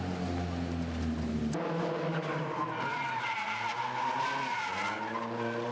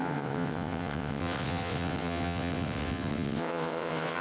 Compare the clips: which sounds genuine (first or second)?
first